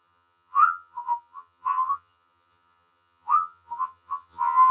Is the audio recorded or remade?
remade